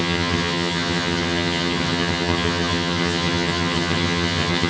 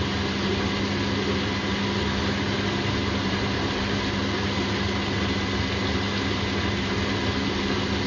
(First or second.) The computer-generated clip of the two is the first